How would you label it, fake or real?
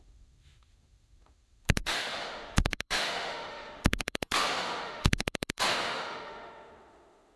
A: fake